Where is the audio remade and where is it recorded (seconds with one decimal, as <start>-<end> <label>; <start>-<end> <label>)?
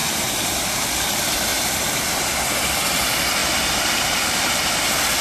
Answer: 0.0-0.8 remade; 0.8-1.5 recorded; 1.5-2.2 remade; 2.2-5.2 recorded